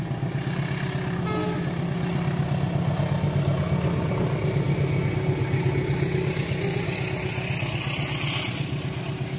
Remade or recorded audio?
recorded